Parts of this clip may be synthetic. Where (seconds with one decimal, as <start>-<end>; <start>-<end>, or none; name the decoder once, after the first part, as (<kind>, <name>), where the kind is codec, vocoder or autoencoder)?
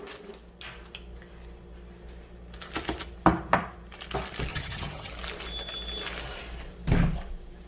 4.5-5.1 (vocoder, HiFi-GAN)